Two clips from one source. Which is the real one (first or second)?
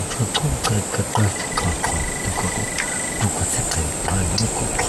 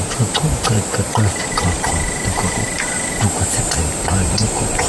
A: first